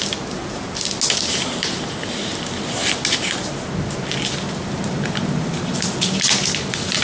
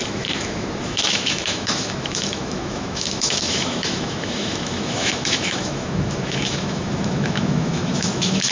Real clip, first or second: first